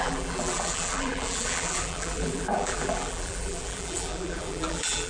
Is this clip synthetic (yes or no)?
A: yes